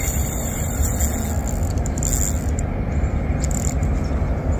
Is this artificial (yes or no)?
no